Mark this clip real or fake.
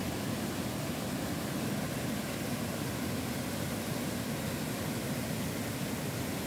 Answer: real